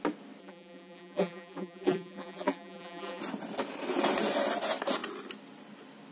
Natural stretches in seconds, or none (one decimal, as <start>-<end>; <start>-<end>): 0.0-0.4; 3.2-6.1